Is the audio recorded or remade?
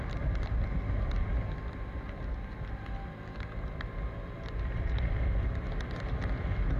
recorded